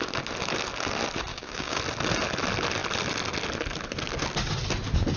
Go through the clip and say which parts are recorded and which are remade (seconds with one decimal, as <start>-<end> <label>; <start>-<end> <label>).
0.0-1.3 recorded; 1.3-1.8 remade; 1.8-5.2 recorded